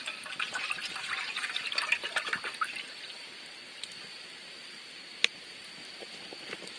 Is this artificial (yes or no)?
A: yes